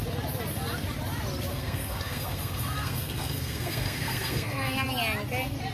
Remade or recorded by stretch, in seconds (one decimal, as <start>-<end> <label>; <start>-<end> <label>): 0.0-1.5 recorded; 1.5-4.9 remade; 4.9-5.7 recorded